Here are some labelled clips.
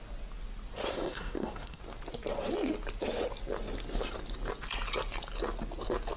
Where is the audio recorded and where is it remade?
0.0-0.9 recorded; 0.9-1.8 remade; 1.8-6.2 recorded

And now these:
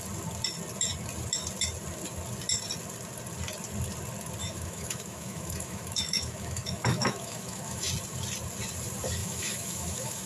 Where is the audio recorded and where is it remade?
0.0-4.4 recorded; 4.4-7.9 remade; 7.9-9.2 recorded; 9.2-10.3 remade

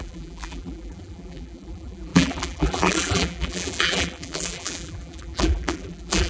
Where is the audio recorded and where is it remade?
0.0-6.3 remade

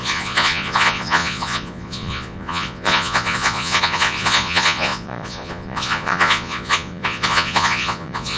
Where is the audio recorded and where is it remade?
0.0-8.4 remade

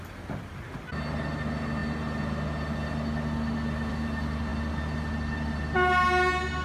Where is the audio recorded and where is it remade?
0.0-6.6 recorded

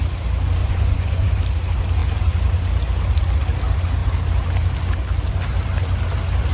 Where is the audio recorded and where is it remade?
0.0-0.6 recorded; 0.6-1.4 remade; 1.4-6.5 recorded

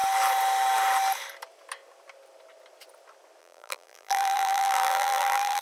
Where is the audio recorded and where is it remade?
0.0-3.4 recorded; 3.4-5.6 remade

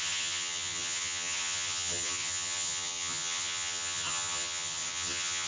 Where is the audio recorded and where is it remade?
0.0-5.5 remade